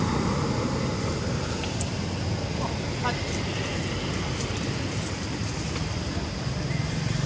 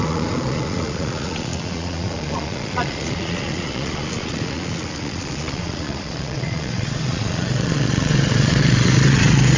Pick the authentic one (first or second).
first